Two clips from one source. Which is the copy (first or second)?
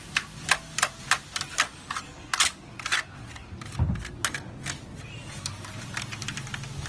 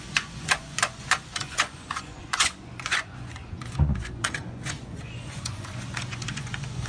second